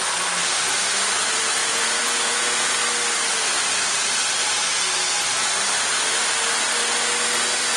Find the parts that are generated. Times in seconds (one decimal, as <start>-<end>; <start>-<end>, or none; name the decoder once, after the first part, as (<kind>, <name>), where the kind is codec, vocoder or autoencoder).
1.6-2.8 (vocoder, Vocos)